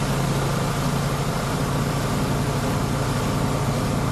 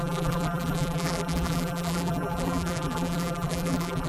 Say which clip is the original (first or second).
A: first